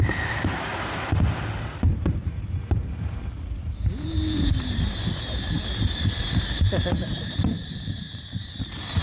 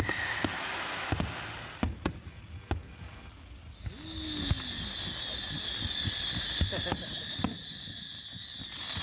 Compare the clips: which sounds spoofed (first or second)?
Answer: first